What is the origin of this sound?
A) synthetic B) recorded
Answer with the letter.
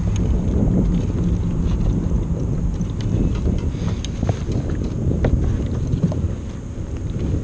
B